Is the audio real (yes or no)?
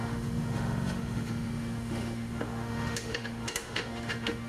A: no